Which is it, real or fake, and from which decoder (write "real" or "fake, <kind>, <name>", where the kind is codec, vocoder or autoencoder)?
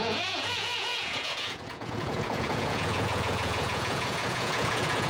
fake, vocoder, Vocos